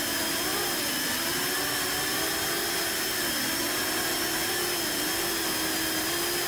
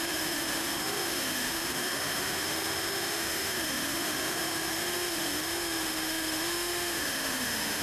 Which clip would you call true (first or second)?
first